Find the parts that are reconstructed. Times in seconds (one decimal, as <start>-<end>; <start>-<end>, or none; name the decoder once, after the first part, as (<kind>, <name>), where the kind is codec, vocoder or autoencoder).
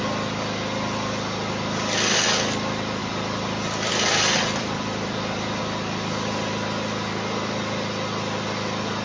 3.0-5.6 (vocoder, BigVGAN v2)